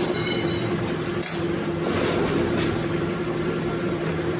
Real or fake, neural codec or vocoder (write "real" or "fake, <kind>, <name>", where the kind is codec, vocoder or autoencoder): fake, vocoder, BigVGAN v2